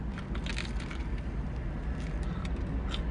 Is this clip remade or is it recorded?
recorded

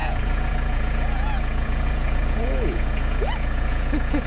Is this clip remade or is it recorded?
remade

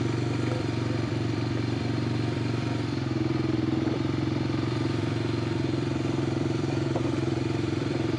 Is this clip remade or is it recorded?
remade